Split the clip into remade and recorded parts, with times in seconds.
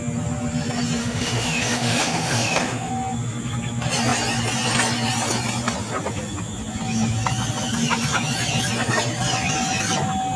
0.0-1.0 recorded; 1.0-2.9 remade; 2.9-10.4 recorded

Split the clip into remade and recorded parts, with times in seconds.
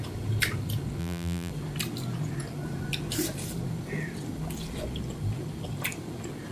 0.0-1.0 recorded; 1.0-1.5 remade; 1.5-6.5 recorded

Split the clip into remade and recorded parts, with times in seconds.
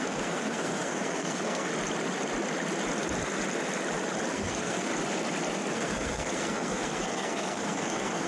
0.0-1.7 remade; 1.7-4.3 recorded; 4.3-4.9 remade; 4.9-5.7 recorded; 5.7-8.3 remade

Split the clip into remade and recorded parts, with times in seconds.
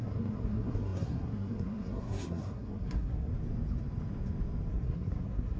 0.0-3.3 remade; 3.3-4.7 recorded; 4.7-5.6 remade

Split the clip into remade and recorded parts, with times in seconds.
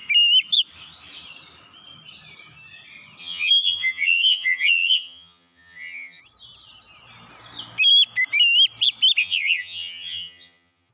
0.0-3.2 recorded; 3.2-6.2 remade; 6.2-9.2 recorded; 9.2-10.9 remade